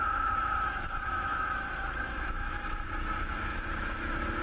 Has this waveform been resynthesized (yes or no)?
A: yes